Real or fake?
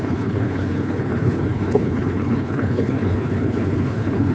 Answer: fake